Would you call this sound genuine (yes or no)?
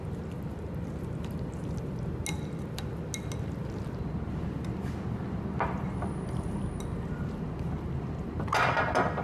yes